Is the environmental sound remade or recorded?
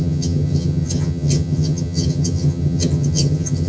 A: remade